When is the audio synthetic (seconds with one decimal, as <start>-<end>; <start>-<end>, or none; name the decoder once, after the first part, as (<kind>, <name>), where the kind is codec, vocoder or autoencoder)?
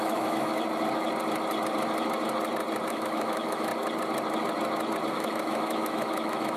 0.0-0.5 (autoencoder, DAC-VAE); 2.9-3.7; 5.1-6.6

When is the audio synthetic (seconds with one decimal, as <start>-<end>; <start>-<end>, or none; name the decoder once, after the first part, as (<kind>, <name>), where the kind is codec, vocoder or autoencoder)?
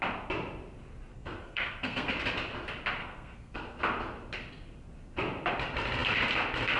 1.1-2.1 (codec, SNAC); 3.0-3.8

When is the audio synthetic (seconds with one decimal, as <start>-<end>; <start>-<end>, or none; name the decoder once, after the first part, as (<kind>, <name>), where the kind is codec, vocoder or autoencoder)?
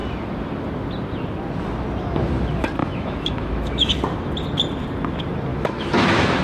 2.8-3.9 (autoencoder, DAC-VAE); 5.5-6.4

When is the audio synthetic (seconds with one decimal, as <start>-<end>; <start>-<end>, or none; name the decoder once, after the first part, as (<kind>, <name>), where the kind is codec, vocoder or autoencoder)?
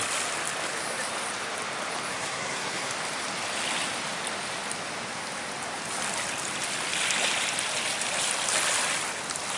2.1-2.9 (codec, SNAC)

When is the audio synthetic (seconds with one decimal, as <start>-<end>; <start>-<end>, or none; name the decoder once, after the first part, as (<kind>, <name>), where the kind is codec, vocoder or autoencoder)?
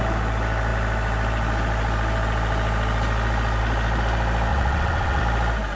4.5-5.2 (vocoder, WaveNeXt)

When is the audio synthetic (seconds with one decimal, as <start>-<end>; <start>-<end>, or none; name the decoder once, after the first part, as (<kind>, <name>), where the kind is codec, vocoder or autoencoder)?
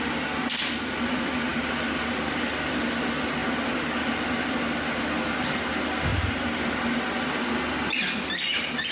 1.5-2.8 (vocoder, BigVGAN v2); 6.1-6.7